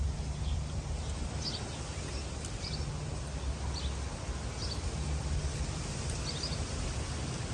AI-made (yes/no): no